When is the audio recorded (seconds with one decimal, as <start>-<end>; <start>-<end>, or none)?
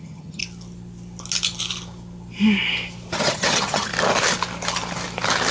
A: 0.4-3.2; 3.9-5.5